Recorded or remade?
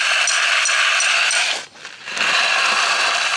recorded